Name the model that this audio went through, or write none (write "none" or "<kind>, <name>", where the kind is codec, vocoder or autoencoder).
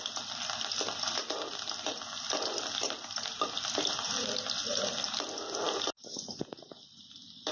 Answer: none